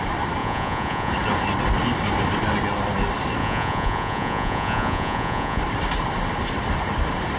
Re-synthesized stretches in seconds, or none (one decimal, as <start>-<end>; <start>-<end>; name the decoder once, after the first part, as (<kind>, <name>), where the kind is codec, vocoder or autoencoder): 0.4-1.1 (vocoder, Vocos); 3.4-5.6